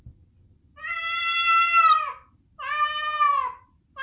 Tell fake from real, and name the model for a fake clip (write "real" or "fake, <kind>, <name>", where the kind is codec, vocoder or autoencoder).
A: real